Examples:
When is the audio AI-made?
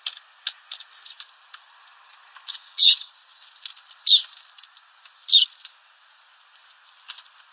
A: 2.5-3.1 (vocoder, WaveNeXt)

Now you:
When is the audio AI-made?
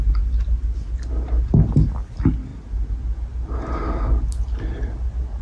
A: none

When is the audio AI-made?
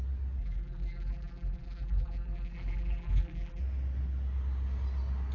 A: 0.4-3.6 (vocoder, BigVGAN v2)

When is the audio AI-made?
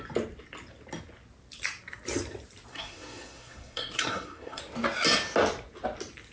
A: 2.7-4.6 (codec, SNAC)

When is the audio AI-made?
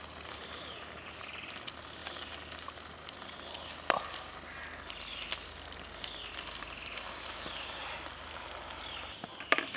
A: none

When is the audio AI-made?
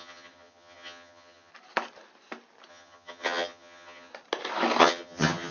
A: 0.0-1.5 (vocoder, HiFi-GAN); 2.7-4.1; 4.8-5.5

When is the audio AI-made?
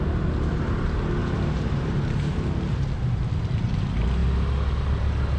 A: 1.2-2.0 (vocoder, BigVGAN v2)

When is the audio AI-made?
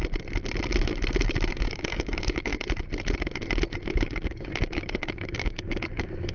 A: 1.5-2.5 (codec, DAC); 3.9-6.3